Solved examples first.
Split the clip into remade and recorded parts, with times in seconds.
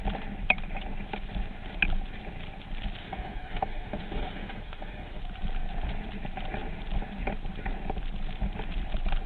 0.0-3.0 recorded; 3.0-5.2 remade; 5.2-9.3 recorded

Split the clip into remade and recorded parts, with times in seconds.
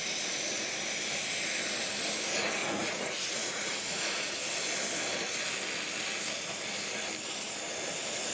0.0-2.6 recorded; 2.6-4.4 remade; 4.4-8.3 recorded